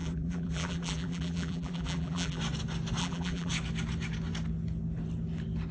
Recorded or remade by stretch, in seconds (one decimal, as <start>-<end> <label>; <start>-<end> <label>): 0.0-2.4 remade; 2.4-3.0 recorded; 3.0-3.5 remade; 3.5-5.7 recorded